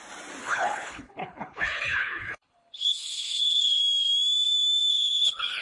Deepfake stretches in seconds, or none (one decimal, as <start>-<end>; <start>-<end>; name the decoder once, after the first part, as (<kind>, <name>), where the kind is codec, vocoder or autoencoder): 0.4-3.8 (codec, HILCodec); 4.9-5.6